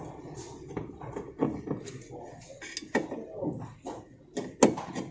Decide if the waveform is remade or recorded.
recorded